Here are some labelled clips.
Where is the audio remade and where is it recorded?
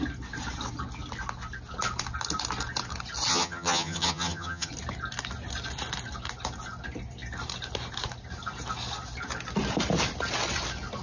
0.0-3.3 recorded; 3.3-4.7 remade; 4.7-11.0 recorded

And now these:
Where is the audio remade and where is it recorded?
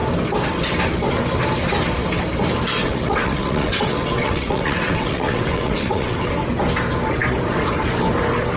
0.0-2.8 recorded; 2.8-6.3 remade; 6.3-8.6 recorded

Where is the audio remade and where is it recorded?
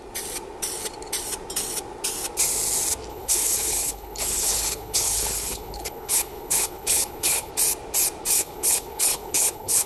0.0-3.1 recorded; 3.1-7.5 remade; 7.5-8.4 recorded; 8.4-9.9 remade